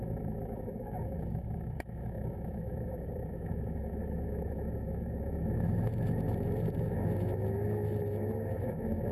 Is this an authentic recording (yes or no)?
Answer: no